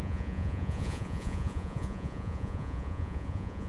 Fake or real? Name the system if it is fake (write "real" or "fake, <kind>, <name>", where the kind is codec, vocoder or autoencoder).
fake, vocoder, Vocos